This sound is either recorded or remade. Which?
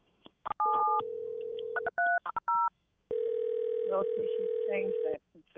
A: remade